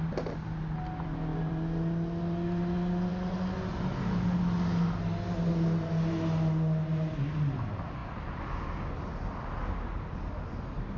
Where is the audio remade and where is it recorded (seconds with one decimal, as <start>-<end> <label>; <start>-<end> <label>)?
0.0-11.0 recorded

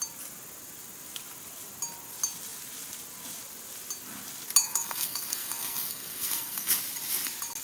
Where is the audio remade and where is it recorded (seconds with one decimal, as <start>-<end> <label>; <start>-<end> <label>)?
0.0-4.6 recorded; 4.6-6.7 remade; 6.7-7.6 recorded

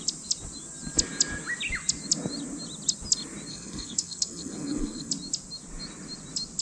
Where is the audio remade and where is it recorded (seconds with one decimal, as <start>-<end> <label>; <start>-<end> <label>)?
0.0-3.5 recorded; 3.5-5.1 remade; 5.1-6.6 recorded

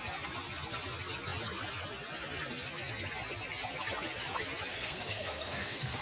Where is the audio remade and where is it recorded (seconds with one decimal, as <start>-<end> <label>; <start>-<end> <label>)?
0.0-4.7 recorded; 4.7-6.0 remade

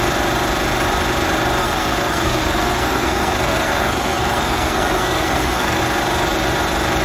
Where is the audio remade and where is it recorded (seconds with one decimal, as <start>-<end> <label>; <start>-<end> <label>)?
0.0-1.6 recorded; 1.6-5.8 remade; 5.8-7.0 recorded

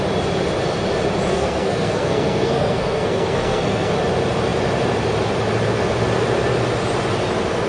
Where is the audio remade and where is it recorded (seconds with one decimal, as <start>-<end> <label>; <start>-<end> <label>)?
0.0-1.3 recorded; 1.3-3.9 remade; 3.9-7.7 recorded

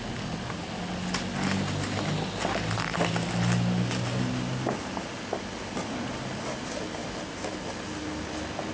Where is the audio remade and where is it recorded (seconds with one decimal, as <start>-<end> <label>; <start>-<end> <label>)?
0.0-8.7 recorded